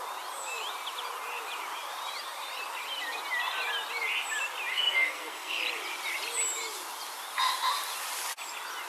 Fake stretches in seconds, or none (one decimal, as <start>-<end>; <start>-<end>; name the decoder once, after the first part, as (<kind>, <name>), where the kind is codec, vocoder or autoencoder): 4.7-5.6 (codec, SNAC)